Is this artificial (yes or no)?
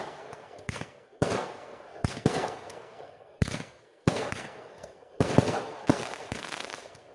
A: yes